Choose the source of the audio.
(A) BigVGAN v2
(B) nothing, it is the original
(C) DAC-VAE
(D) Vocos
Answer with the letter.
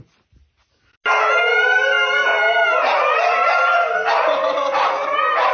B